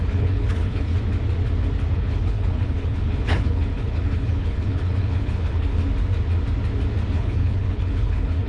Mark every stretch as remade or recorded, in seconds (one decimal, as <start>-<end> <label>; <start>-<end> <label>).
0.0-0.9 remade; 0.9-1.9 recorded; 1.9-5.8 remade; 5.8-7.1 recorded; 7.1-8.5 remade